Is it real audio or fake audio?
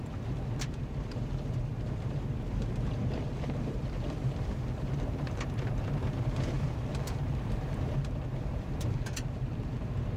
fake